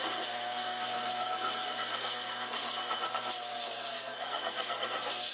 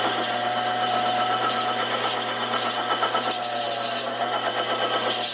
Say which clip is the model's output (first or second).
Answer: first